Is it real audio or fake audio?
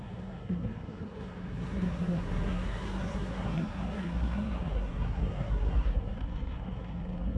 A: fake